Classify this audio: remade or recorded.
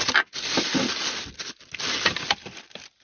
recorded